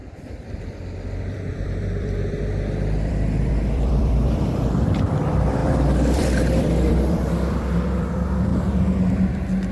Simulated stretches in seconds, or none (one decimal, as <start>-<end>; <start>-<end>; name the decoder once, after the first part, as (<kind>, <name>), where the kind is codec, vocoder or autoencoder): 1.2-8.5 (vocoder, BigVGAN v2); 9.1-9.7